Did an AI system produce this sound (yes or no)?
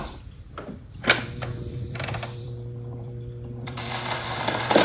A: yes